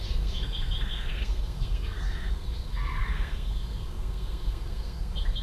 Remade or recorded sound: remade